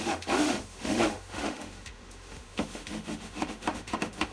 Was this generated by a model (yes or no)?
yes